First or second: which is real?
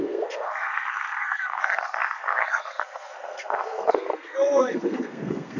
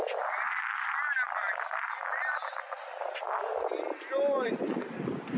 second